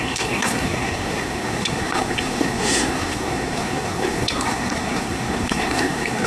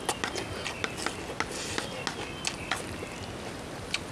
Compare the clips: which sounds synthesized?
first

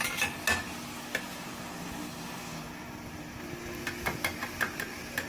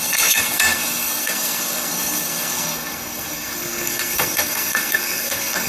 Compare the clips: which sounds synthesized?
second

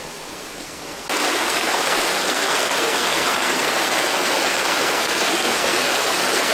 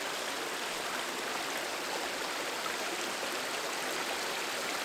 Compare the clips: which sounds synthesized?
first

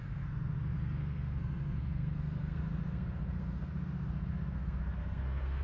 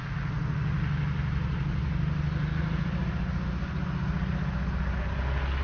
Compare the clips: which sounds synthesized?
first